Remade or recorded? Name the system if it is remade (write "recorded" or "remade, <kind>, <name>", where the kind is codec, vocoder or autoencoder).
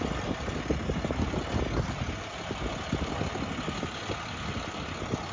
recorded